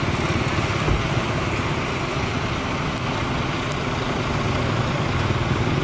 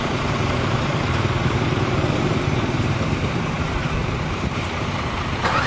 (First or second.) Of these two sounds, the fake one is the second